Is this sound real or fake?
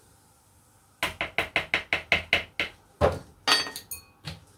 real